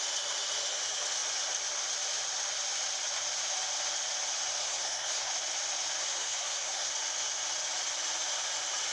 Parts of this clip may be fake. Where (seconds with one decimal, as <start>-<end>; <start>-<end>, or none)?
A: 4.6-5.3; 6.0-6.9